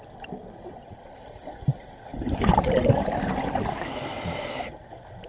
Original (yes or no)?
no